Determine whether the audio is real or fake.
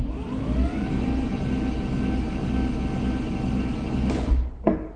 real